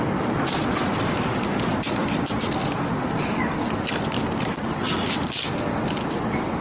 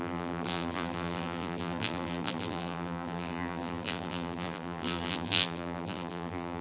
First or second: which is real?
first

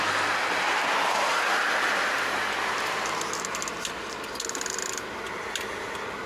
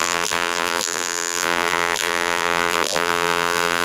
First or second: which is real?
first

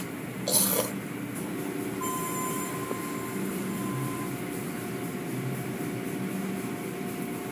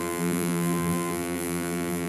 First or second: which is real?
first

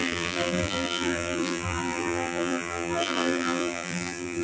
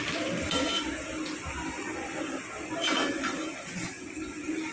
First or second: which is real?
second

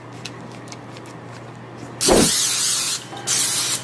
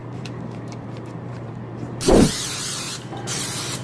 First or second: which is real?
first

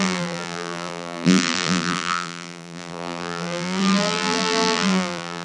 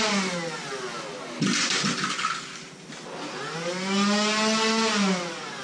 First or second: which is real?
second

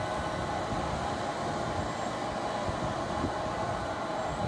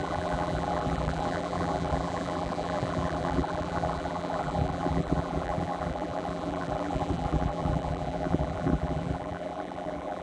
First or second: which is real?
first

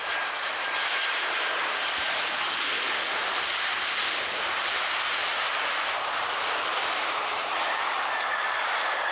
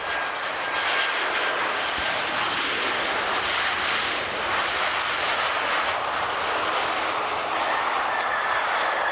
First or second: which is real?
second